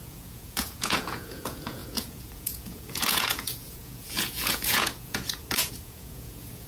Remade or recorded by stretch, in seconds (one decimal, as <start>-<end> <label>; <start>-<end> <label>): 0.0-6.7 remade